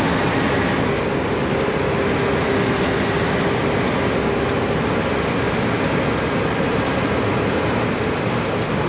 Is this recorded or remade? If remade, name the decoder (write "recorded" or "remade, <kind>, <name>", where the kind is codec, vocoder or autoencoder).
recorded